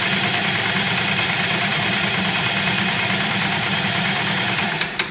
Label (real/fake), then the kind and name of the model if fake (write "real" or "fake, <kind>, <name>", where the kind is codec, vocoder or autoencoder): fake, vocoder, BigVGAN v2